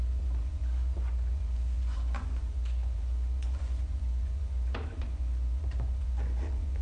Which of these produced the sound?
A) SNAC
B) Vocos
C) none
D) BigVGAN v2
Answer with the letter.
B